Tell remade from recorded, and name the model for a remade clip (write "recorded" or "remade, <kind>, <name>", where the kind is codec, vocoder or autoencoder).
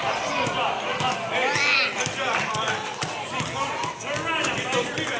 recorded